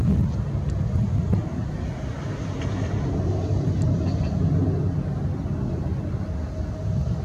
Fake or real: real